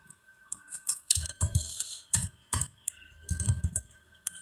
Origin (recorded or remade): remade